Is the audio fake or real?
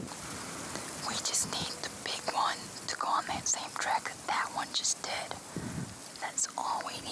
real